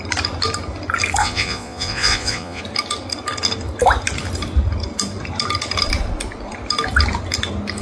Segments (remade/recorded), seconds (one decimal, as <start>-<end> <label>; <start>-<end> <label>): 0.0-1.2 recorded; 1.2-2.6 remade; 2.6-7.8 recorded